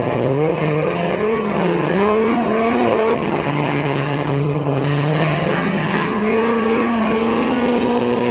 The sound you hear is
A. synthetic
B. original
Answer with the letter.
A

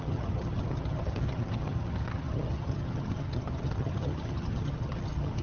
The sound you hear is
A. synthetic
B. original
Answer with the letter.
A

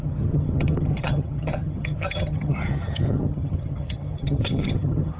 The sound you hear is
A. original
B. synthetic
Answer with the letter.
B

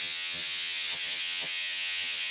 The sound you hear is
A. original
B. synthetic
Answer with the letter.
B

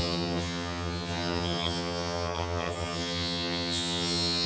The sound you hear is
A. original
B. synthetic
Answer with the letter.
B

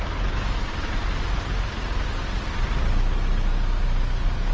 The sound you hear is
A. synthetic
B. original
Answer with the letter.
B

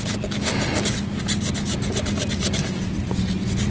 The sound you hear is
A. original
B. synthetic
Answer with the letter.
A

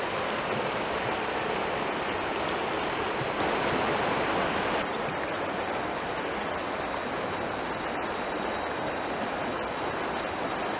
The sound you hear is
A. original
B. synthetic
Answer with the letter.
A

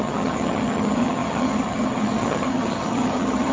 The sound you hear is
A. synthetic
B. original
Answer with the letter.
A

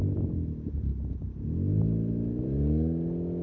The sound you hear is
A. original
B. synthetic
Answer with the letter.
A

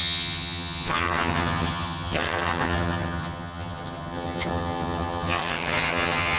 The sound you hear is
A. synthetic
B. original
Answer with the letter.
A